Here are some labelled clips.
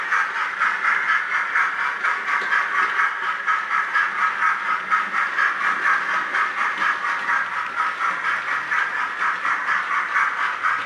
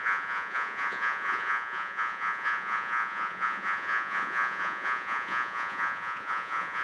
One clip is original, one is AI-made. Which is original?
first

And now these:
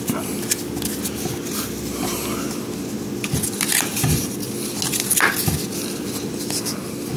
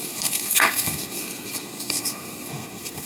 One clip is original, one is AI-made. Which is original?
first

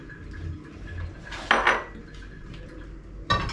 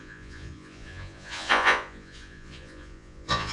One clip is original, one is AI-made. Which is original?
first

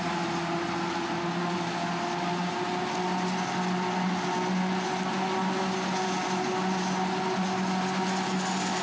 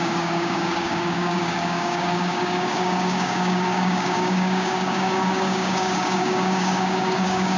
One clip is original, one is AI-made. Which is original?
first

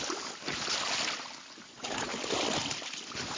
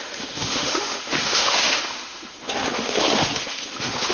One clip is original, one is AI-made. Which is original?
first